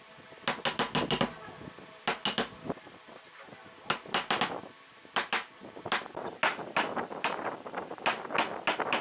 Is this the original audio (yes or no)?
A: yes